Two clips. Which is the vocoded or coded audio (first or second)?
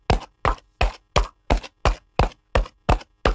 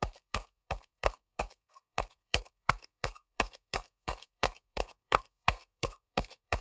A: second